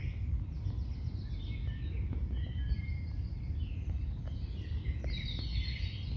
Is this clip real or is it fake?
real